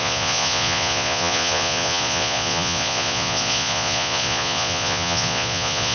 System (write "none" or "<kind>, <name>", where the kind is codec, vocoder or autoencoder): vocoder, Vocos